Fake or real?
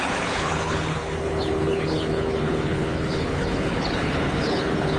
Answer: fake